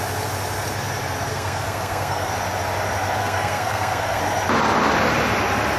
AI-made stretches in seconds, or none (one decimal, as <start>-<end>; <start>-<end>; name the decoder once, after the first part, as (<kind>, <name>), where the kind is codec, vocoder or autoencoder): 1.3-2.3 (codec, SNAC); 3.2-4.2